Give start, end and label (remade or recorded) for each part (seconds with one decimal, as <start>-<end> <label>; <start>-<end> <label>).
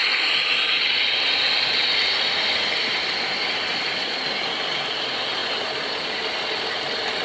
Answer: 0.0-7.2 recorded